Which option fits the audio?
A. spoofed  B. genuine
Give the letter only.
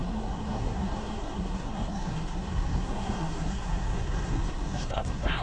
A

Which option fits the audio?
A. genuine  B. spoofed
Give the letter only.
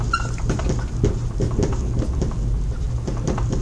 A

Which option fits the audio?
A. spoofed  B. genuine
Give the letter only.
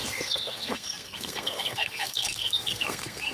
A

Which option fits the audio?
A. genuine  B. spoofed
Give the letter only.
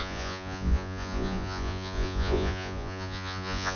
B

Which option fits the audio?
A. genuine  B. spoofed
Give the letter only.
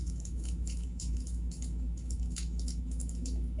B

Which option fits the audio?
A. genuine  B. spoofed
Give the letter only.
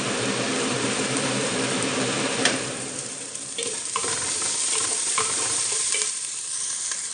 B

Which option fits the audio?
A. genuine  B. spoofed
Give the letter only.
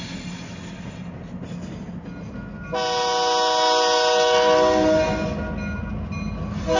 A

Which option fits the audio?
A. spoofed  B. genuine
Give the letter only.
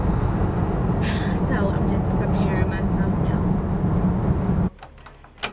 B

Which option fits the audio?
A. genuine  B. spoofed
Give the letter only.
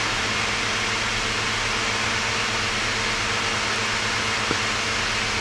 A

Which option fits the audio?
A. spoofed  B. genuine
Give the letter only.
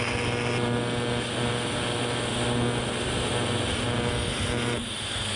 B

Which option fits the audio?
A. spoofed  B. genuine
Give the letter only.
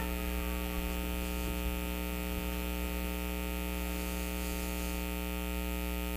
B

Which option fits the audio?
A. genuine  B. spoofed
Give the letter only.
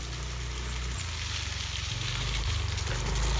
A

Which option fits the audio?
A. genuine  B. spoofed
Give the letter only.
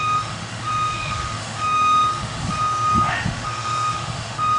B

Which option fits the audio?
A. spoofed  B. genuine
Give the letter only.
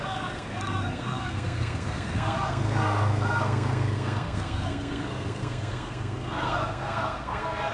A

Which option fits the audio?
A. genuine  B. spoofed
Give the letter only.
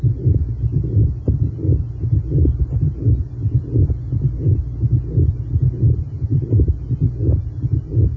A